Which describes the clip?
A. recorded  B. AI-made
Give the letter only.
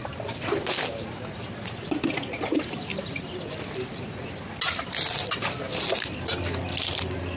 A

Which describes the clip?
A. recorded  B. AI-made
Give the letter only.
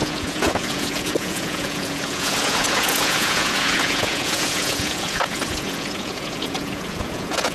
B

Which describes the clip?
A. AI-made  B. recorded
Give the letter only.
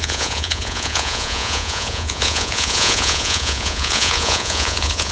A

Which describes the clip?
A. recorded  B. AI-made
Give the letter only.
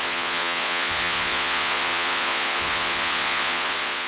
B